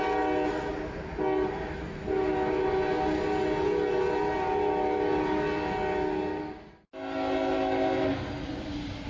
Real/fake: real